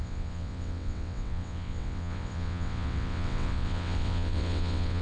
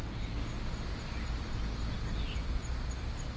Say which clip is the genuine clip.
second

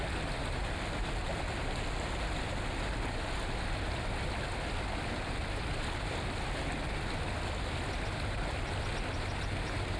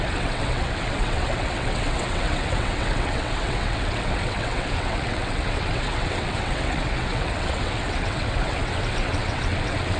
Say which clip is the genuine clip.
first